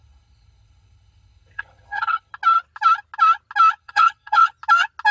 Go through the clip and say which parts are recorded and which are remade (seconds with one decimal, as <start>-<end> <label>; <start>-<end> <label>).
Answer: 0.0-2.3 remade; 2.3-3.8 recorded; 3.8-4.5 remade; 4.5-5.1 recorded